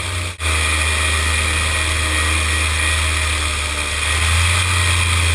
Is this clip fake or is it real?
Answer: real